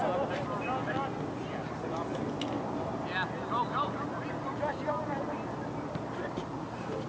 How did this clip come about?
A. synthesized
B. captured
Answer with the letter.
B